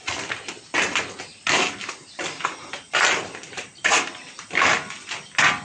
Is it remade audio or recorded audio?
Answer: recorded